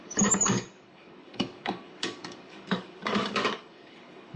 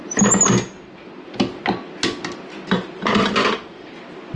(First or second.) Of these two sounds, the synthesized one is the first